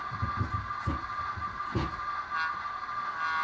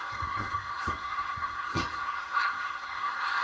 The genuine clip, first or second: first